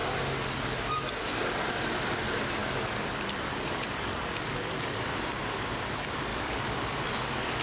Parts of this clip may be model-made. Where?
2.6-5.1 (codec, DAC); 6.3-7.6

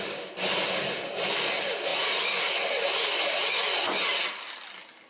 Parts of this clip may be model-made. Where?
none

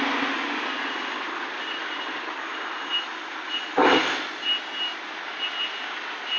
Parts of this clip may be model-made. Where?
none

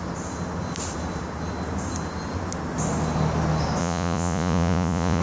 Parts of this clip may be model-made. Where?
3.8-5.2 (vocoder, Vocos)